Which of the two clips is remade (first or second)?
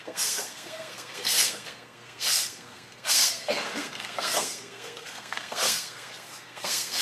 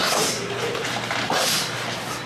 first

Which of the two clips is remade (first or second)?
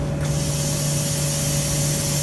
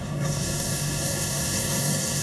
second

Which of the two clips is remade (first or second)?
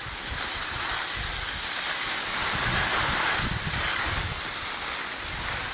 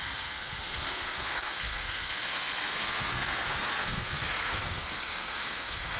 second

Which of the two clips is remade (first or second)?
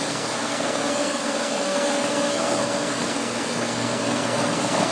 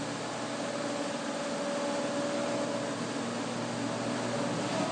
first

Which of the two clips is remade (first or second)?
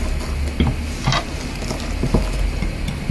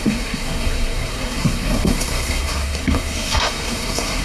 second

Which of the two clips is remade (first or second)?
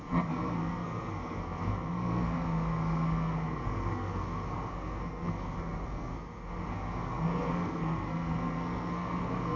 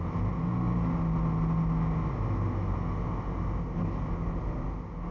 first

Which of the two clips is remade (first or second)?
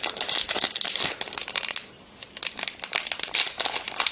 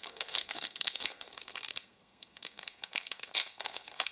second